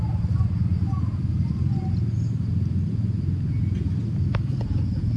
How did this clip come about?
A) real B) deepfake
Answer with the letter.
A